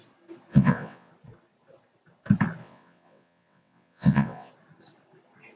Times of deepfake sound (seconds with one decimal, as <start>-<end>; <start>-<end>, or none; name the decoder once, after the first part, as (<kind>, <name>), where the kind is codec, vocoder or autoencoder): 0.5-1.1 (vocoder, WaveNeXt); 2.6-4.5